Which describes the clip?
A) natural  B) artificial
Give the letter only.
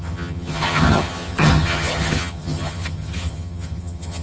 B